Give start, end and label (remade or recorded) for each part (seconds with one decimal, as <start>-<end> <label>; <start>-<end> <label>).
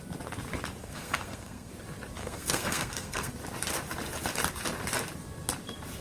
0.0-0.8 recorded; 0.8-1.7 remade; 1.7-2.2 recorded; 2.2-3.3 remade; 3.3-6.0 recorded